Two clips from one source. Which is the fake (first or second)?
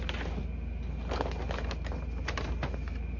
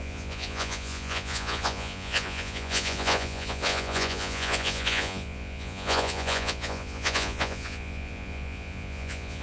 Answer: second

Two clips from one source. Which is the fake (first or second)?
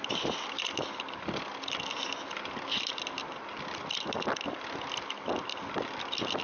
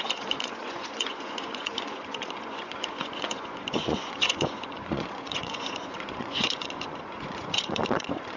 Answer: second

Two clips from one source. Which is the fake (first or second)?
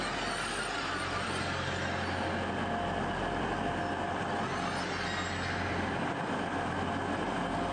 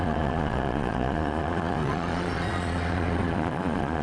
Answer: second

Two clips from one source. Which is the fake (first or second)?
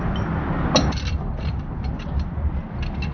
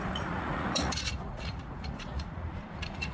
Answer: second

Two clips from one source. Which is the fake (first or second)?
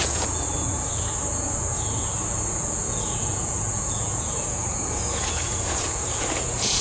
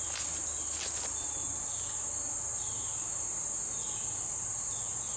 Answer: first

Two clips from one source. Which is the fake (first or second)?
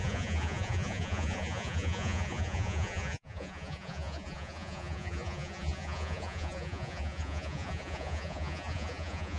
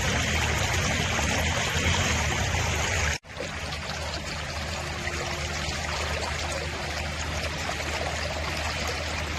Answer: first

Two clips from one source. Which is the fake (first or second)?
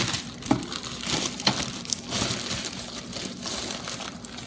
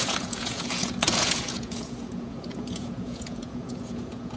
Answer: second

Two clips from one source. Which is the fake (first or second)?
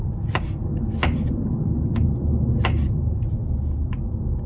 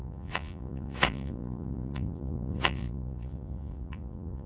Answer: second